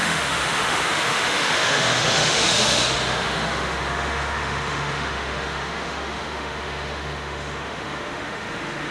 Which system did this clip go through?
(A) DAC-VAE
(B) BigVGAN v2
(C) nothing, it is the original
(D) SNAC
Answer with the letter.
A